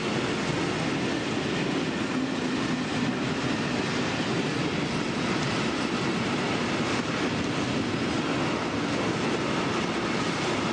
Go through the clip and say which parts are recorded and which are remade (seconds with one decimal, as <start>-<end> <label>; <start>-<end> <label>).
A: 0.0-10.7 recorded